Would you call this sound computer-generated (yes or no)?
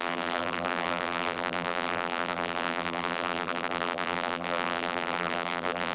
yes